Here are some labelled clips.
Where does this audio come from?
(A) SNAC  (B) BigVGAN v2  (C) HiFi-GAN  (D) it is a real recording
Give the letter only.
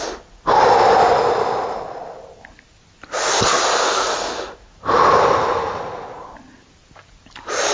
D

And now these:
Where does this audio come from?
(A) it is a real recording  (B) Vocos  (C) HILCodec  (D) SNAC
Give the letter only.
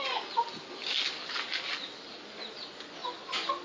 A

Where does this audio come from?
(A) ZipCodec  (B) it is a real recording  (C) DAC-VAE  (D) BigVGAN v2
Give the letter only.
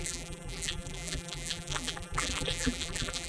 D